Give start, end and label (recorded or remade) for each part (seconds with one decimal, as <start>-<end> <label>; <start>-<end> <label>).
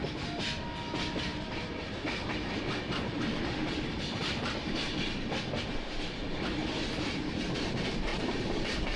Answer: 0.0-1.3 recorded; 1.3-3.9 remade; 3.9-8.1 recorded; 8.1-9.0 remade